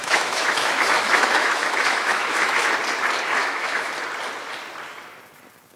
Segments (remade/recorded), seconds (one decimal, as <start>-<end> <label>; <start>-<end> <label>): 0.0-2.7 remade; 2.7-3.4 recorded; 3.4-3.9 remade; 3.9-5.8 recorded